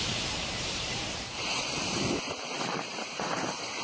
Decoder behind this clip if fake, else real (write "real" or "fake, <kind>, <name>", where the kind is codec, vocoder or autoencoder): fake, vocoder, BigVGAN v2